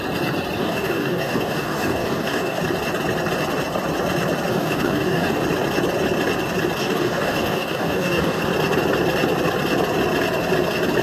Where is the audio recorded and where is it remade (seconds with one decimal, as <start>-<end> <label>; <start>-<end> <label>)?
0.0-0.6 recorded; 0.6-2.6 remade; 2.6-4.5 recorded; 4.5-5.4 remade; 5.4-6.8 recorded; 6.8-8.4 remade; 8.4-11.0 recorded